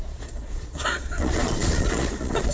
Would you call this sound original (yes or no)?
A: no